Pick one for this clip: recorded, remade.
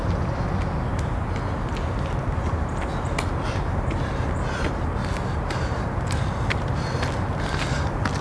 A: recorded